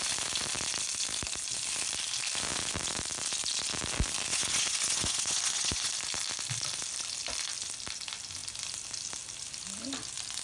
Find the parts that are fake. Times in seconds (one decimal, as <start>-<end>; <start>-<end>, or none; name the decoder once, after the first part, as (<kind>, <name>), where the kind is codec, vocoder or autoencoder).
4.3-5.9 (vocoder, Vocos)